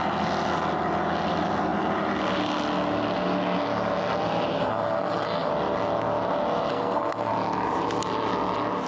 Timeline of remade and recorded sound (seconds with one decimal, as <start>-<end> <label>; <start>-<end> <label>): 0.0-4.6 recorded; 4.6-5.5 remade; 5.5-6.7 recorded; 6.7-7.3 remade; 7.3-8.9 recorded